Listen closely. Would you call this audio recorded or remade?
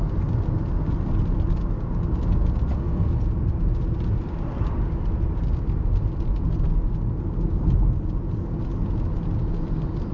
recorded